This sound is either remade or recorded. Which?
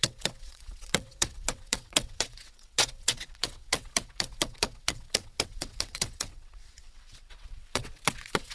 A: remade